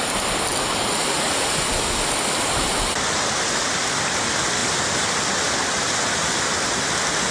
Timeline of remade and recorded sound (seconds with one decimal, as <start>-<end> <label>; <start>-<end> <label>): 0.0-7.3 recorded